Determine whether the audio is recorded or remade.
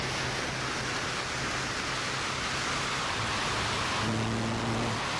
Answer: recorded